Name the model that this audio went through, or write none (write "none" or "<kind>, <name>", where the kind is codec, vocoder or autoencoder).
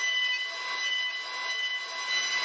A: none